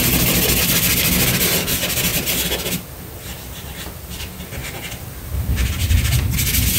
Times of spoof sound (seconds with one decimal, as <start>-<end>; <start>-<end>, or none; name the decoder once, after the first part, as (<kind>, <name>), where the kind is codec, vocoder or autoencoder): none